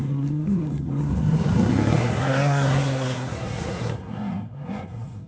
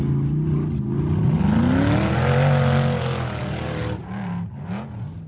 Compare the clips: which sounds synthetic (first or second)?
first